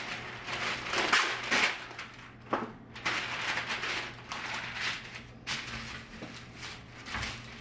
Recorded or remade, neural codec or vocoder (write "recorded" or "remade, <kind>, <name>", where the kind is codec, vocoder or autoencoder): recorded